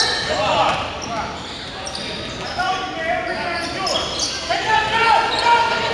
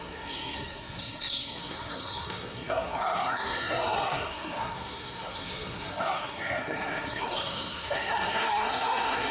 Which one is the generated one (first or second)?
second